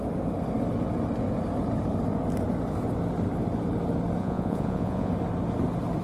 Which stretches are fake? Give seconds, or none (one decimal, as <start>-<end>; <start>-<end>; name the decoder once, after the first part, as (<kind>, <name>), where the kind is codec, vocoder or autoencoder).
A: 4.2-5.1 (vocoder, Vocos)